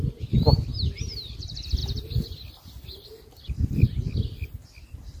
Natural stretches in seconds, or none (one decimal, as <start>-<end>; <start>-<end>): 0.0-5.2